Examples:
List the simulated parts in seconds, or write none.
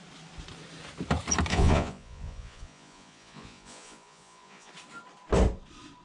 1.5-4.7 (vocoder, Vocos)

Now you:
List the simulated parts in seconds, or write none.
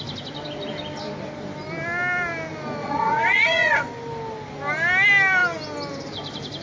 2.8-3.8 (vocoder, Vocos)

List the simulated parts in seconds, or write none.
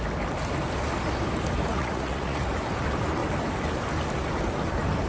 1.7-2.5 (vocoder, Vocos)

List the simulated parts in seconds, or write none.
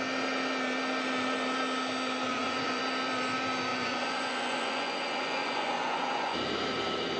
2.3-2.8 (vocoder, Vocos); 3.7-6.4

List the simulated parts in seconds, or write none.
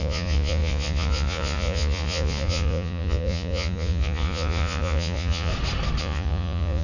0.0-5.5 (vocoder, Vocos); 6.0-6.8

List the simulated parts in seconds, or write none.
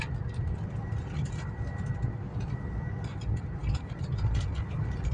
none